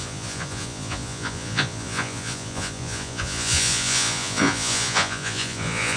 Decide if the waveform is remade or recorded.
remade